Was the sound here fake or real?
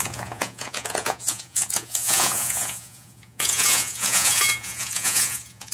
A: fake